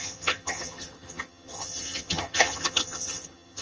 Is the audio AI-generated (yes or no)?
yes